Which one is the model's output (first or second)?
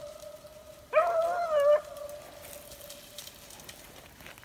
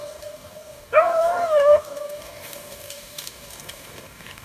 second